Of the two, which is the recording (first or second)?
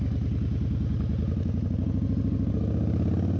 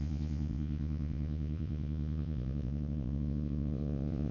first